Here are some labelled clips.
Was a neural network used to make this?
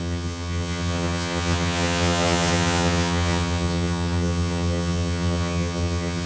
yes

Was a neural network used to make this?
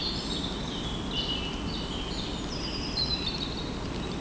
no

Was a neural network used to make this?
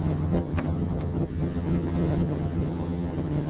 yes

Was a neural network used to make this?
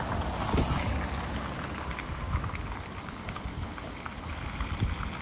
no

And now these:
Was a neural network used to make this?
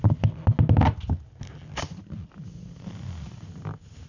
no